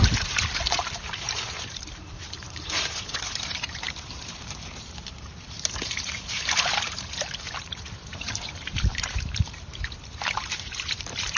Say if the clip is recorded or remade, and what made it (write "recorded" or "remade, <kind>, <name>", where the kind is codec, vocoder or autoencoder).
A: remade, vocoder, BigVGAN v2